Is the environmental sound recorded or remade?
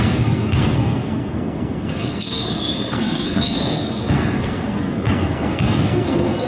remade